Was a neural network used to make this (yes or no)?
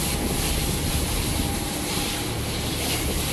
no